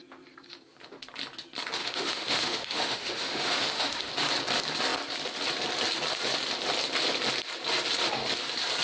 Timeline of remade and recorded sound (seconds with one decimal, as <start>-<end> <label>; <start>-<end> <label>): 0.0-1.8 recorded; 1.8-4.1 remade; 4.1-8.8 recorded